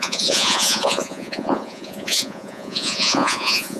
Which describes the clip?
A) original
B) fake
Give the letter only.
B